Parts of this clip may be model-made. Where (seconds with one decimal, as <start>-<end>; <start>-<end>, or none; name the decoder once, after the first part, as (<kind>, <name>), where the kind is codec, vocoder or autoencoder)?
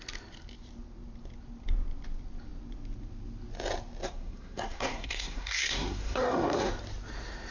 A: 4.0-6.7 (codec, SNAC)